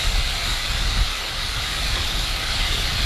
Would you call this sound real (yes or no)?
no